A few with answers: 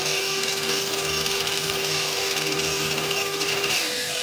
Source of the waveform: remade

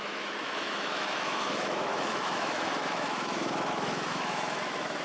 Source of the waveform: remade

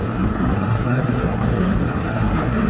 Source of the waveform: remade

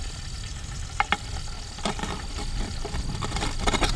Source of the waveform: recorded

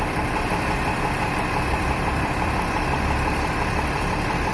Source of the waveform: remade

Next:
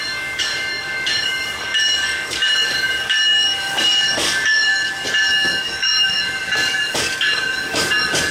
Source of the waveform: remade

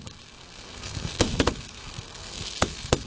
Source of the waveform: remade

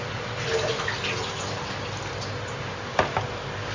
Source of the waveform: recorded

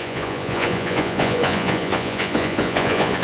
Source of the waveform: remade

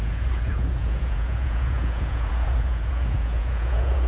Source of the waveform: remade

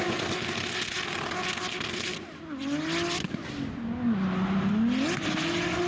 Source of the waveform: recorded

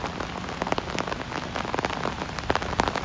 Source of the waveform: recorded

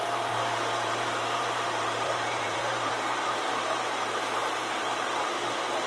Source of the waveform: remade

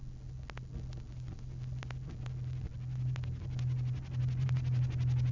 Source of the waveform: recorded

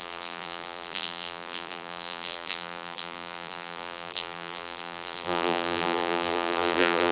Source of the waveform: remade